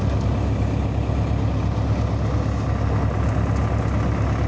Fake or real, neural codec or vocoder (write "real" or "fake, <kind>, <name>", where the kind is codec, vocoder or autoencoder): real